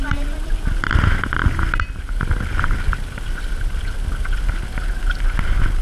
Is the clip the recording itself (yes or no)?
yes